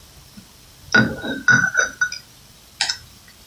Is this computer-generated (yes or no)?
no